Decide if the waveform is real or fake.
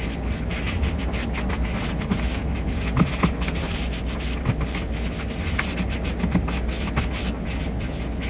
real